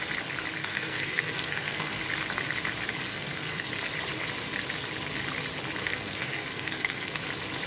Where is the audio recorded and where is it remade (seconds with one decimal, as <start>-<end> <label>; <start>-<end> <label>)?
0.0-0.6 recorded; 0.6-2.0 remade; 2.0-3.1 recorded; 3.1-3.7 remade; 3.7-5.8 recorded; 5.8-7.2 remade; 7.2-7.7 recorded